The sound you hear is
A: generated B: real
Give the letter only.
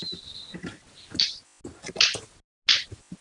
B